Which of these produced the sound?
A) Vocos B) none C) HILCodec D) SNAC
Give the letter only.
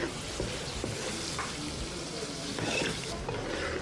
B